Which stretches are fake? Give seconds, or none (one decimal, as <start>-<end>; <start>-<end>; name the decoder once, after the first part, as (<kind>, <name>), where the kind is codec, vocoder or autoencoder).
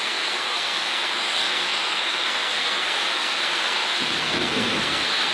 0.0-5.3 (codec, SNAC)